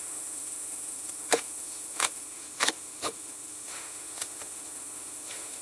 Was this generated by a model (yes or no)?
yes